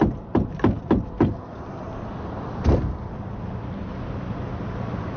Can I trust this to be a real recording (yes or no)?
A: no